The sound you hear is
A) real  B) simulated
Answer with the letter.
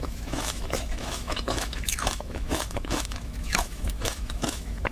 B